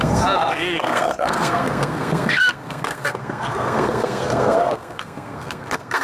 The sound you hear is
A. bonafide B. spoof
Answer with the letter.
B